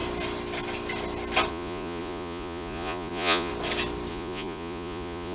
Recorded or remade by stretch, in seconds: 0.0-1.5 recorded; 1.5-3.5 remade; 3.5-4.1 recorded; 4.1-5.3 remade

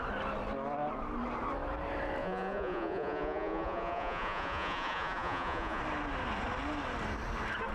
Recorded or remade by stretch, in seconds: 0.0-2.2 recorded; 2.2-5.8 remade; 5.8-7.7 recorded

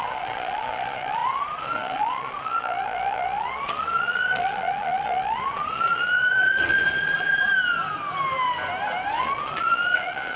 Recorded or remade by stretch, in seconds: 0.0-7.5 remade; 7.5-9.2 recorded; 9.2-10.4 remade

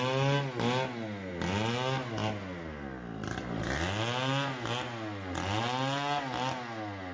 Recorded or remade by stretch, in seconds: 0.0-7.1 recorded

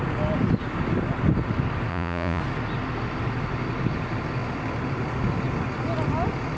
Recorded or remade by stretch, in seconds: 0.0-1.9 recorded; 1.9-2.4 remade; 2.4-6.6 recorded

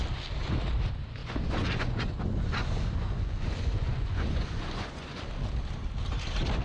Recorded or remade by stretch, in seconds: 0.0-1.2 recorded; 1.2-5.2 remade; 5.2-6.6 recorded

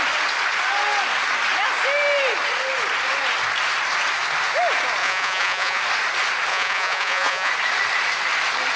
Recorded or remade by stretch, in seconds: 0.0-5.0 recorded; 5.0-5.8 remade; 5.8-6.5 recorded; 6.5-7.5 remade; 7.5-8.8 recorded

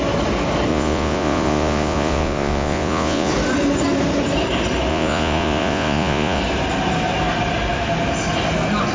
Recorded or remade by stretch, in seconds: 0.0-0.7 recorded; 0.7-3.3 remade; 3.3-4.9 recorded; 4.9-6.4 remade; 6.4-8.9 recorded